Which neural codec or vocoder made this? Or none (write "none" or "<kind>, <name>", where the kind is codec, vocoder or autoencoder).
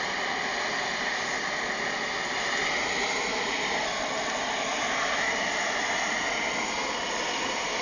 none